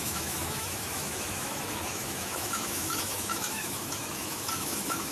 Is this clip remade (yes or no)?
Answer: yes